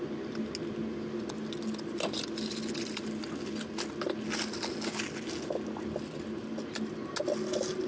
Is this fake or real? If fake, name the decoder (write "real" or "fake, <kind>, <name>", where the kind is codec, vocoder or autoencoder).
real